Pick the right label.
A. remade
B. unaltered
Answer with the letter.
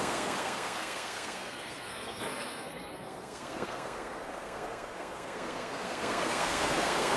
A